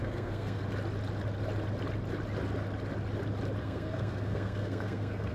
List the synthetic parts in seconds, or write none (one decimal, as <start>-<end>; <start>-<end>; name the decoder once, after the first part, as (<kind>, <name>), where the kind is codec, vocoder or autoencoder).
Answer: 0.0-0.6 (codec, SNAC); 3.6-5.3